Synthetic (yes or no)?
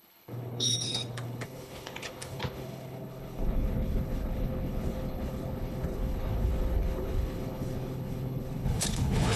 yes